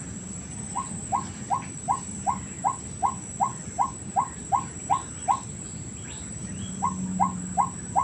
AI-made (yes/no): no